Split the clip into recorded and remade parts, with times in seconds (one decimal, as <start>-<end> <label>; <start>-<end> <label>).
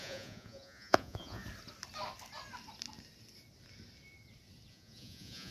0.0-1.4 remade; 1.4-4.7 recorded; 4.7-5.5 remade